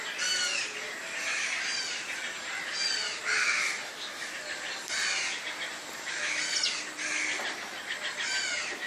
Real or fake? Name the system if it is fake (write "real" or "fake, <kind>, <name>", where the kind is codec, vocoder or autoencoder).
fake, vocoder, BigVGAN v2